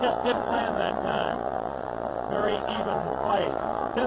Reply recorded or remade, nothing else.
remade